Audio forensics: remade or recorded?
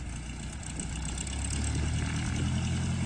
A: recorded